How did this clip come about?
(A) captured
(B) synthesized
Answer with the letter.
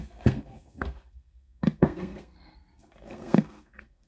B